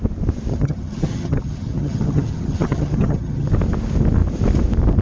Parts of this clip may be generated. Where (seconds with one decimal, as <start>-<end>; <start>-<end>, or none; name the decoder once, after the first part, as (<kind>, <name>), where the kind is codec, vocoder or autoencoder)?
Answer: 0.5-3.5 (vocoder, HiFi-GAN)